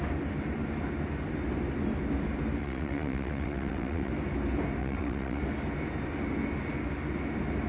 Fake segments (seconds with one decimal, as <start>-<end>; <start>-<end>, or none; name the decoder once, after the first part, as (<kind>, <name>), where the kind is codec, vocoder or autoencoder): 2.6-4.1 (vocoder, WaveNeXt); 4.8-5.4